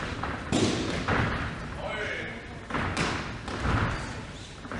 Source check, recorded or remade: recorded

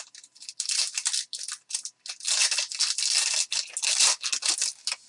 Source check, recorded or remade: recorded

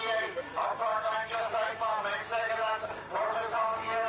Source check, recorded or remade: remade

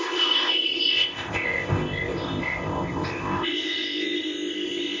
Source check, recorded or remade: remade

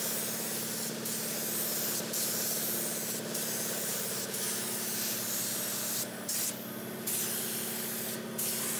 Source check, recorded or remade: recorded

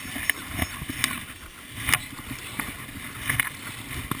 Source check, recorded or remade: recorded